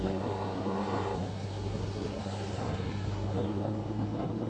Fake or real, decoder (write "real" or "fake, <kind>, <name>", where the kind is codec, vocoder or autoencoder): fake, codec, SNAC